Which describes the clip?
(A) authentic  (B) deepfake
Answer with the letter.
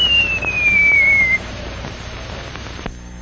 B